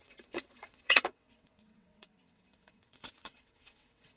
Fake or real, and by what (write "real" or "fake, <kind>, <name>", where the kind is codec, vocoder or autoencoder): fake, vocoder, WaveNeXt